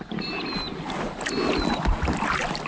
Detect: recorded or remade recorded